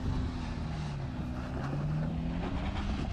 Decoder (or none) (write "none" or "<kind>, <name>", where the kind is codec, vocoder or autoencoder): none